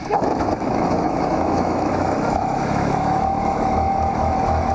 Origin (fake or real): fake